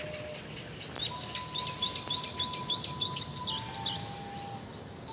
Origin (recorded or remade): recorded